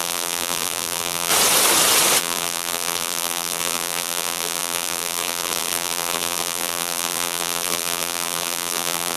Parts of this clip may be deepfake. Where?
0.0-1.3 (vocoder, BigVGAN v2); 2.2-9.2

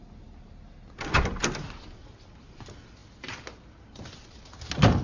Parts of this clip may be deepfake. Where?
none

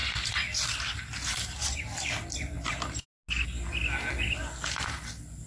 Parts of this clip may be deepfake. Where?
none

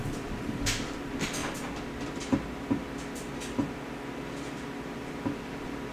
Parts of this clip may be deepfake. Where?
0.0-1.4 (vocoder, BigVGAN v2); 4.9-5.9

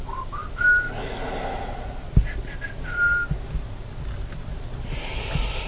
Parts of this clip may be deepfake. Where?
none

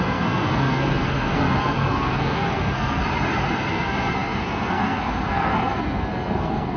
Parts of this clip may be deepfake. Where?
0.0-3.0 (codec, SNAC); 3.7-6.8

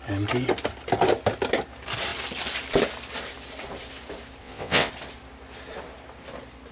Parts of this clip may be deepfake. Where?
4.4-4.9 (vocoder, WaveNeXt)